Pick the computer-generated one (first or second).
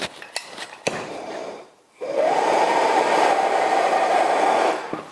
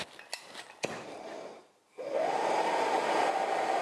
first